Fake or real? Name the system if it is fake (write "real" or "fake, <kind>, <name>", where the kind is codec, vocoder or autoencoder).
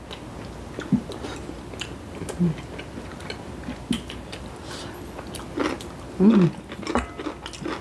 real